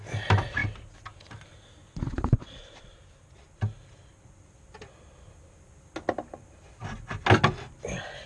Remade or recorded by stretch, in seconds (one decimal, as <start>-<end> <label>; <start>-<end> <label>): 0.0-8.3 recorded